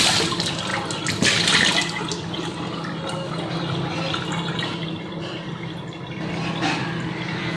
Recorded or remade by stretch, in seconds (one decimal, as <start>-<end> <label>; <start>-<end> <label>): 0.0-7.6 recorded